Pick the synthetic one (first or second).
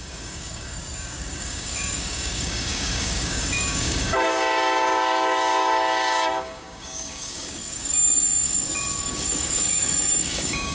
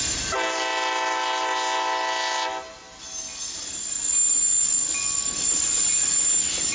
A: first